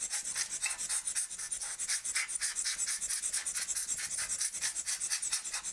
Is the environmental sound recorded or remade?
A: recorded